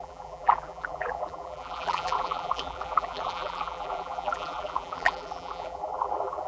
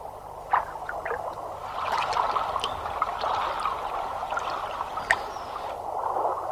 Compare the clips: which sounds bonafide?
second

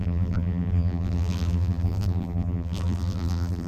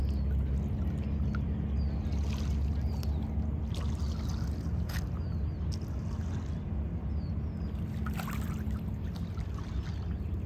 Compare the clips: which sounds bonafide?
second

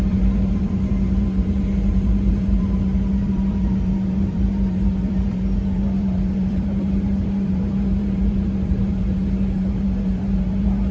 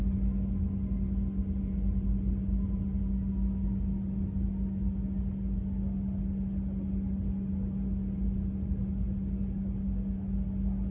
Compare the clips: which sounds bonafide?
second